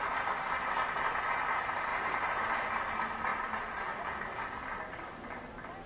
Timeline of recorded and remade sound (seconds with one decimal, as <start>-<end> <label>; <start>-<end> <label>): 0.0-1.9 recorded; 1.9-2.5 remade; 2.5-3.3 recorded; 3.3-4.0 remade; 4.0-5.9 recorded